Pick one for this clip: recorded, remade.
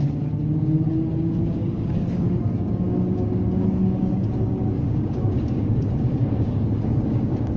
remade